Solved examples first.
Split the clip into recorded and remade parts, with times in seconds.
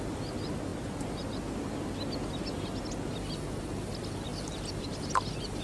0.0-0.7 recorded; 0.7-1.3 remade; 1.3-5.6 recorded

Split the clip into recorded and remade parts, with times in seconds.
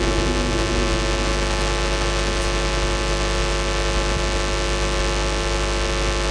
0.0-6.3 recorded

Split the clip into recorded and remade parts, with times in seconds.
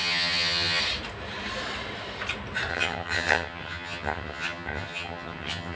0.0-0.8 remade; 0.8-2.7 recorded; 2.7-5.8 remade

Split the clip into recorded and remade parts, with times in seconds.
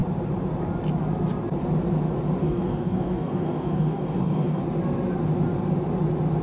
0.0-2.4 recorded; 2.4-4.6 remade; 4.6-6.4 recorded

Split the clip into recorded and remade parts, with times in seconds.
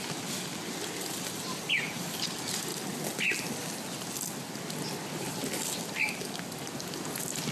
0.0-7.5 recorded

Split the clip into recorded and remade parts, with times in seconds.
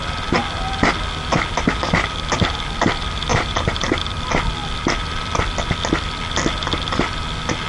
0.0-3.3 recorded; 3.3-4.0 remade; 4.0-7.7 recorded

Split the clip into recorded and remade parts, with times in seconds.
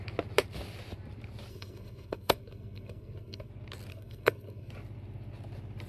0.0-1.5 recorded; 1.5-3.5 remade; 3.5-3.9 recorded; 3.9-4.7 remade; 4.7-5.9 recorded